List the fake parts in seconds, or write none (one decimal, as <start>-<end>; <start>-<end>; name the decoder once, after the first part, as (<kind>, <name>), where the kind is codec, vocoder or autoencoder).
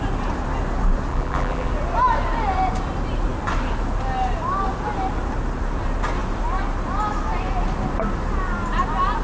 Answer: 1.1-1.7 (vocoder, BigVGAN v2)